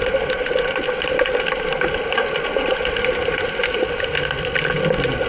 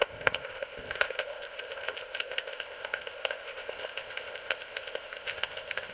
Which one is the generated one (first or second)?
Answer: second